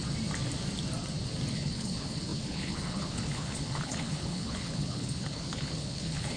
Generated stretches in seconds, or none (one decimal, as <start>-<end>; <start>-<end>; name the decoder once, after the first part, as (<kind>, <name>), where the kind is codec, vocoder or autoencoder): 1.5-6.4 (codec, HILCodec)